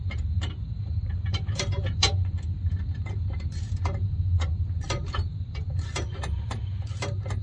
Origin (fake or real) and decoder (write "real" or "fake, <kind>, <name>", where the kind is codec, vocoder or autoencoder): fake, vocoder, BigVGAN v2